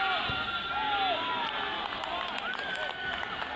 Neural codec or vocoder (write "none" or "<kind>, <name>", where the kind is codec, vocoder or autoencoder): none